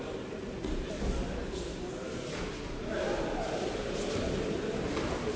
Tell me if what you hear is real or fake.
real